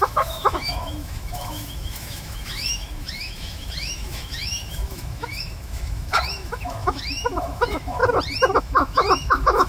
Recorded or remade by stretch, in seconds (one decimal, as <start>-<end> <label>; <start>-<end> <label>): 0.0-8.0 remade; 8.0-8.6 recorded; 8.6-9.7 remade

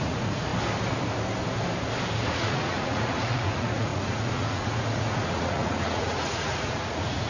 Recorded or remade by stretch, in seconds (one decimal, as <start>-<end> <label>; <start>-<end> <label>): 0.0-0.5 remade; 0.5-2.3 recorded; 2.3-7.3 remade